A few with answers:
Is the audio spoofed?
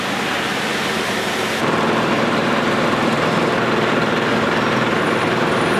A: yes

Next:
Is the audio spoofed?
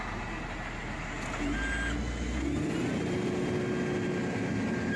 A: no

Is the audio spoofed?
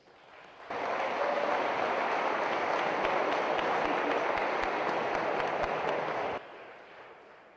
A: no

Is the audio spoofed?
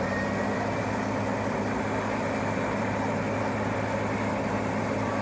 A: no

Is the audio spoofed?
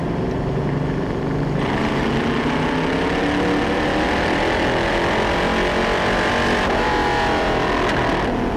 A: no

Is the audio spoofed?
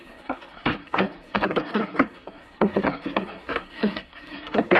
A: yes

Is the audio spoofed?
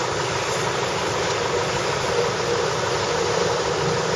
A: no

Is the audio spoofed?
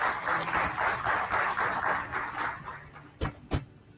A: no